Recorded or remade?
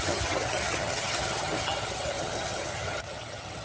remade